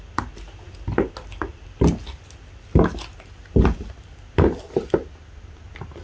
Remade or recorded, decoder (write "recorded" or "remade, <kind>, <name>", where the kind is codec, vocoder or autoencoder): recorded